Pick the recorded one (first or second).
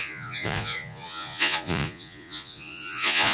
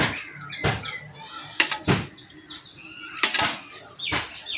second